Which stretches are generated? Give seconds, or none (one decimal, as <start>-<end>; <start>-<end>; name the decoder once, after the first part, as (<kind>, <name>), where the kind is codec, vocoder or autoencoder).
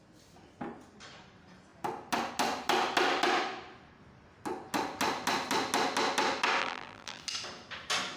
6.6-7.2 (vocoder, BigVGAN v2)